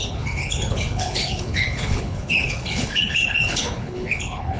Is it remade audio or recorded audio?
remade